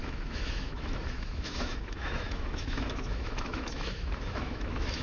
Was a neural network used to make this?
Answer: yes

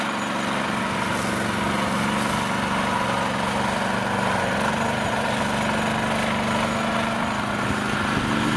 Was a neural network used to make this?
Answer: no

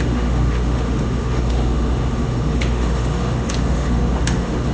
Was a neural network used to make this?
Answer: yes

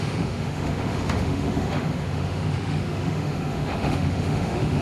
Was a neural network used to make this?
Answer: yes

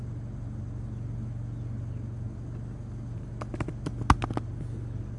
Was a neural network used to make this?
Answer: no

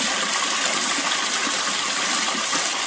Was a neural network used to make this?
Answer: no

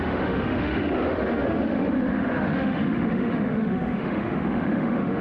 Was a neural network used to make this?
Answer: yes